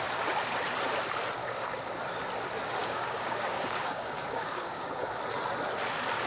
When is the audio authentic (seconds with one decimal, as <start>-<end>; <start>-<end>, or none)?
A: 0.0-1.4; 1.9-2.8; 5.2-6.3

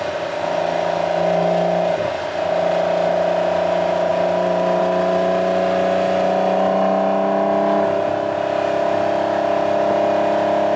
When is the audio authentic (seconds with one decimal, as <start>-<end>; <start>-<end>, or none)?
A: 0.0-10.8